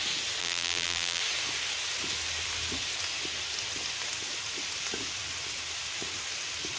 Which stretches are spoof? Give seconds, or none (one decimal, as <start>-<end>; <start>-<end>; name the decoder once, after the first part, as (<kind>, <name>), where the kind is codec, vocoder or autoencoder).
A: 0.4-1.2 (vocoder, BigVGAN v2)